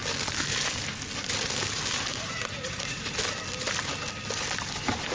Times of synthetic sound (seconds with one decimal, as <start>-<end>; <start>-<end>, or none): 2.1-3.0